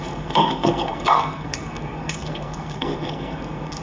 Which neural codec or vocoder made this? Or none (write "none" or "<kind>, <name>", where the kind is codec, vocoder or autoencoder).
codec, SNAC